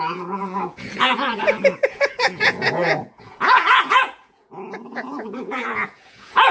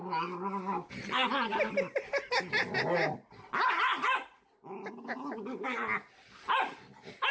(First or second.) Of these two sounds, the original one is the second